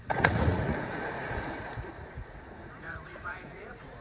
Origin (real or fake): fake